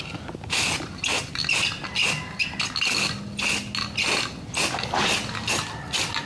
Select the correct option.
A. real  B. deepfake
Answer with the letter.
A